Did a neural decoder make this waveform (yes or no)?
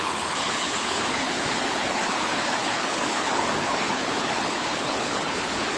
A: yes